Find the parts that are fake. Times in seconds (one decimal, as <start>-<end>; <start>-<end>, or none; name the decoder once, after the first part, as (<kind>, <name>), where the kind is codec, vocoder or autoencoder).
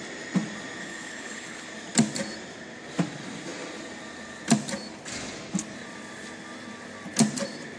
0.8-1.7 (codec, HILCodec)